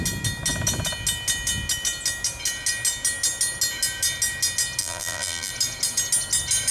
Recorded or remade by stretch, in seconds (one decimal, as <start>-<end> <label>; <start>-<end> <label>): 0.0-4.8 recorded; 4.8-5.5 remade; 5.5-6.7 recorded